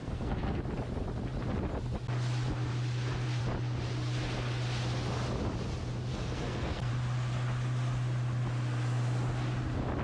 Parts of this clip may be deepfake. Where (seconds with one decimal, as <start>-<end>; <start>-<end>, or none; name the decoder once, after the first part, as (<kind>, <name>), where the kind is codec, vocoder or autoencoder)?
0.0-0.6 (codec, SNAC); 6.1-6.9